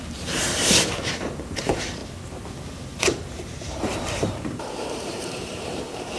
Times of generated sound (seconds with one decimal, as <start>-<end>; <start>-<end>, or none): 0.0-2.0; 3.0-6.2